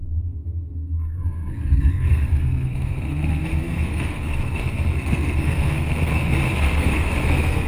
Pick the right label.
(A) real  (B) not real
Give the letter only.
B